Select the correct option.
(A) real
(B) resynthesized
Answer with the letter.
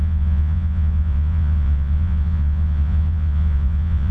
B